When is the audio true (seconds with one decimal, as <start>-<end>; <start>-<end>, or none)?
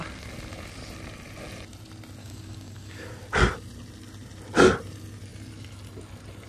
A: 0.0-2.2; 3.1-6.5